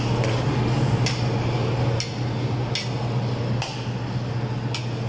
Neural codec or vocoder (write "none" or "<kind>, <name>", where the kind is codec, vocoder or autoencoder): none